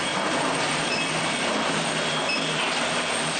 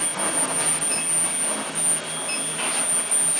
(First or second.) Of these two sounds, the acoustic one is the second